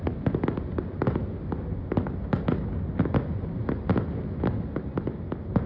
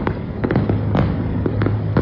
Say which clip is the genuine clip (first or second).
first